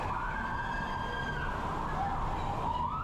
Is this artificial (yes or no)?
no